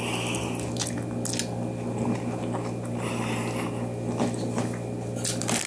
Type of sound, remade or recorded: recorded